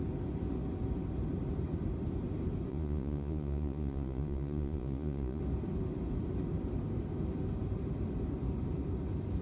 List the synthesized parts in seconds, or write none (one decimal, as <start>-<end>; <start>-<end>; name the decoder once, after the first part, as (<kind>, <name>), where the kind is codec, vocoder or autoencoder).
2.7-5.4 (vocoder, Vocos)

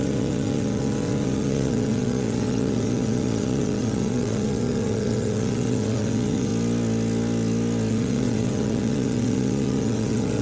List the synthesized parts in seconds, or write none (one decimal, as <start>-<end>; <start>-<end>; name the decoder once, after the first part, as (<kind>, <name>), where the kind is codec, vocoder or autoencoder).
0.0-6.5 (vocoder, WaveNeXt); 7.9-10.4

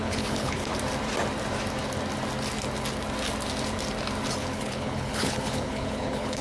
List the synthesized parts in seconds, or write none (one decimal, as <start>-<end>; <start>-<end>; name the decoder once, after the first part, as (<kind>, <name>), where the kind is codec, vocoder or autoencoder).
0.0-0.7 (codec, HILCodec); 4.4-6.4

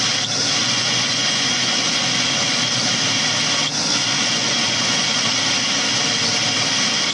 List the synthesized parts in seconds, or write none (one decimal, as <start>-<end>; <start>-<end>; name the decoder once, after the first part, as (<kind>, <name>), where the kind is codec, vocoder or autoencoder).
0.6-2.8 (vocoder, Vocos); 3.9-5.2

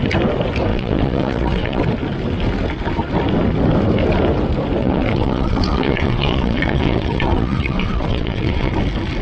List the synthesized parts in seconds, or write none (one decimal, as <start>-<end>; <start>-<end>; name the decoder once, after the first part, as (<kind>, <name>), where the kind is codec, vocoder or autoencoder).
0.7-1.8 (vocoder, WaveNeXt); 4.8-8.7

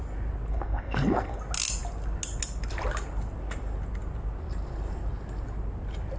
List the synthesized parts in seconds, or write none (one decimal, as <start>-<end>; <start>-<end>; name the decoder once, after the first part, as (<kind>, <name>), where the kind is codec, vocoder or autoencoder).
0.5-1.4 (codec, SNAC)

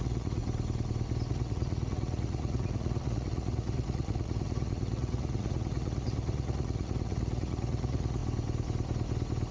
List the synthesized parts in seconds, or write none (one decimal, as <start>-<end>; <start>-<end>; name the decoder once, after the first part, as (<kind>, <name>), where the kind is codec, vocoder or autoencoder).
0.0-0.4 (vocoder, Vocos); 1.3-8.2

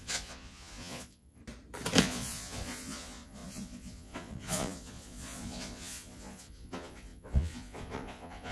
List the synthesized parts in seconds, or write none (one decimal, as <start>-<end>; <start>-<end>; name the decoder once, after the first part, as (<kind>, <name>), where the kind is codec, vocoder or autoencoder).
0.0-1.4 (vocoder, Vocos); 2.0-8.5